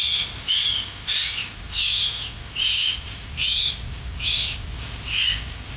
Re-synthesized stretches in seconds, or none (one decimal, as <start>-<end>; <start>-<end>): 2.8-3.3